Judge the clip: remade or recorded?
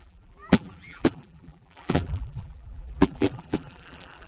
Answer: remade